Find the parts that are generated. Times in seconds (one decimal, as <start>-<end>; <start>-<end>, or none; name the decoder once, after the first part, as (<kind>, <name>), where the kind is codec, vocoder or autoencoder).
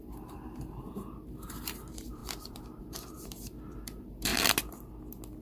0.0-4.3 (vocoder, BigVGAN v2)